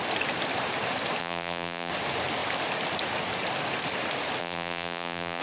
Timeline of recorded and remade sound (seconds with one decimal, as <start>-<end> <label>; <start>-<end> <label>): 0.0-1.2 recorded; 1.2-1.9 remade; 1.9-4.4 recorded; 4.4-5.4 remade

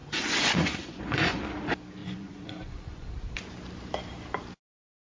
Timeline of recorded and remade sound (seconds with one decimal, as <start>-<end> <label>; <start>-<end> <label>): 0.0-1.4 remade; 1.4-2.0 recorded; 2.0-3.1 remade; 3.1-5.0 recorded

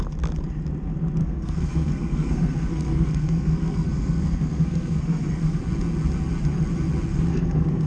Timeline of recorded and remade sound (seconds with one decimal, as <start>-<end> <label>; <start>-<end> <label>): 0.0-1.2 recorded; 1.2-5.6 remade; 5.6-7.1 recorded; 7.1-7.9 remade

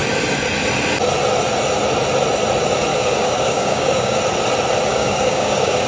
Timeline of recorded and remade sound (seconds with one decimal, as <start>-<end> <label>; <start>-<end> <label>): 0.0-2.9 recorded; 2.9-4.2 remade; 4.2-4.9 recorded; 4.9-5.9 remade

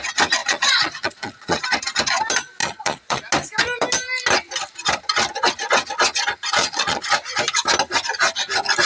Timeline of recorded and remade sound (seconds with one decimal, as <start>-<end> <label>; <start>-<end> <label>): 0.0-0.4 recorded; 0.4-1.6 remade; 1.6-2.6 recorded; 2.6-3.2 remade; 3.2-6.6 recorded; 6.6-7.1 remade; 7.1-8.9 recorded

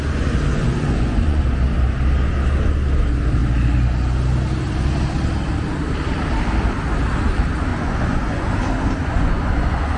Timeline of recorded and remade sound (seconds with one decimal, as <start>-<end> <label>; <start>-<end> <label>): 0.0-0.5 recorded; 0.5-1.4 remade; 1.4-7.7 recorded; 7.7-8.5 remade; 8.5-9.0 recorded; 9.0-10.0 remade

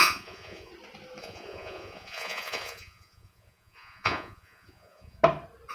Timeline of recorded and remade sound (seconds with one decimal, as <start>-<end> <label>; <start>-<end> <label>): 0.0-0.7 remade; 0.7-1.2 recorded; 1.2-5.2 remade; 5.2-5.7 recorded

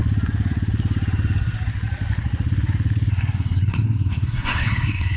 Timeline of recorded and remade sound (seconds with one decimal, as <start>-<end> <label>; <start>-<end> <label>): 0.0-3.1 recorded; 3.1-5.2 remade